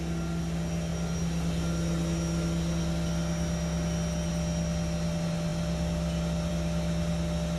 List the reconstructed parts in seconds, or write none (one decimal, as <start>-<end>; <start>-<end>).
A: none